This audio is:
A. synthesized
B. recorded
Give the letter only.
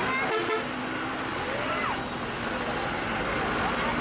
B